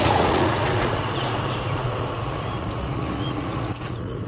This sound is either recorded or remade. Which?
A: remade